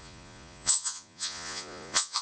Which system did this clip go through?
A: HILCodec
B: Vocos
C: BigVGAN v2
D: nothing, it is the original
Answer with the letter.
B